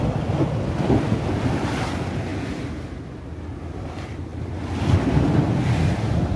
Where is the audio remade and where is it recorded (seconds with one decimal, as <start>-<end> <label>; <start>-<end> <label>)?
0.0-6.4 recorded